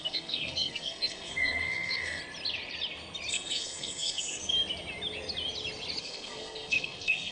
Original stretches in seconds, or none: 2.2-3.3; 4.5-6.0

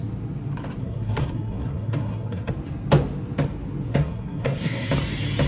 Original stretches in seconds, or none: 0.0-0.8; 2.5-3.9; 4.9-5.5

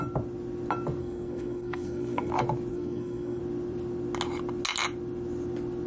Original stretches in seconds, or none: 0.0-1.0; 2.3-2.7; 3.4-5.9

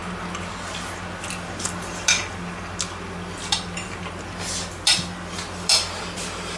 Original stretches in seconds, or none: 0.0-6.6

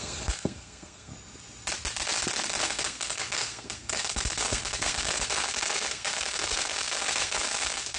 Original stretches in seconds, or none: 1.1-2.6

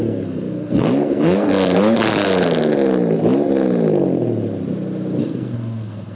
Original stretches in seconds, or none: 1.5-5.2

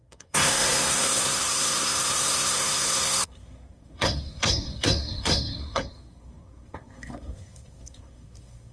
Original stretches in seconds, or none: none

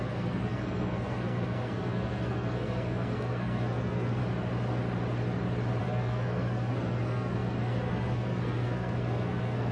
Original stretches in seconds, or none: 4.2-5.8